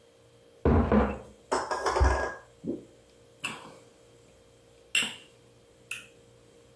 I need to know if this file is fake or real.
real